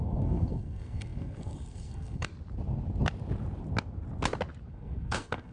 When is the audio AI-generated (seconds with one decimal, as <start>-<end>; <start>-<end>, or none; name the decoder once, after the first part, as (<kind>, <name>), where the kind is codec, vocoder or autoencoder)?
0.0-2.3 (codec, SNAC); 4.7-5.5